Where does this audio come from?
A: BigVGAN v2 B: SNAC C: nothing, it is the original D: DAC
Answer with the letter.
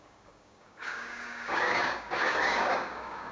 D